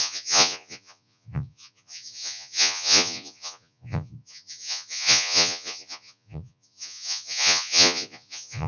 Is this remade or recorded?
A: remade